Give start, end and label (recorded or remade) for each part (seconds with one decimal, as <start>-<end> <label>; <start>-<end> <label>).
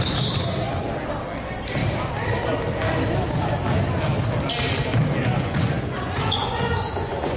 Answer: 0.0-5.2 recorded; 5.2-7.4 remade